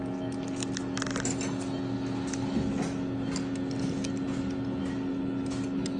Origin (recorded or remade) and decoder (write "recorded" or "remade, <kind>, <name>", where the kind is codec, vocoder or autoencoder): recorded